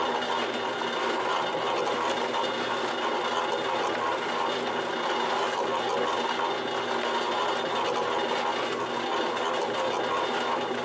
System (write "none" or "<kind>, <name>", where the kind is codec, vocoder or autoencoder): none